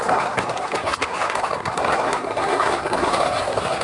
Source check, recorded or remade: remade